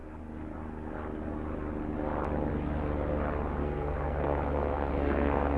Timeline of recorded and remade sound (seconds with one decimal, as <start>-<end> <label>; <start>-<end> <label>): 0.0-3.6 recorded; 3.6-5.6 remade